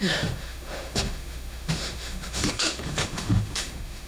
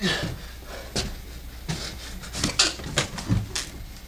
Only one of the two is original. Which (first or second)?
second